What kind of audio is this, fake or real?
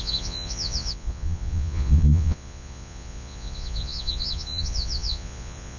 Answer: fake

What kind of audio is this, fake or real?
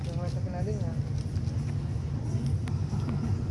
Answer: real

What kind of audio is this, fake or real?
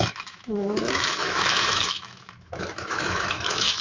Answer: fake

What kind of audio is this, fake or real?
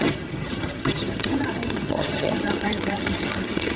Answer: fake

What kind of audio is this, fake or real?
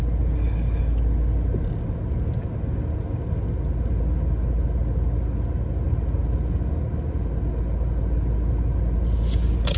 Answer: real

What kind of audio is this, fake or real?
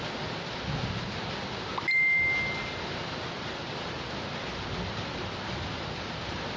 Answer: real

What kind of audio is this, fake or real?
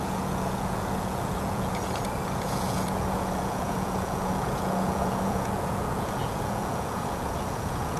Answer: fake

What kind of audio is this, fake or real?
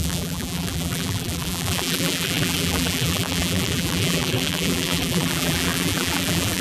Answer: fake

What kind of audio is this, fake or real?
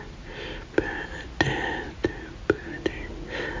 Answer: real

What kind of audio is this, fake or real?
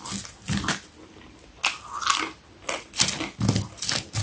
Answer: real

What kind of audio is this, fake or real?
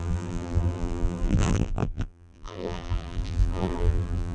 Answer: fake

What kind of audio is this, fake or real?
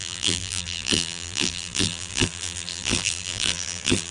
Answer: fake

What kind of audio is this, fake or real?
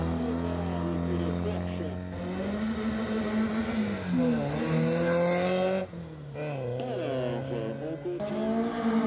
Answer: real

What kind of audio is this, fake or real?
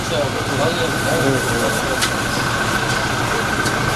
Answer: real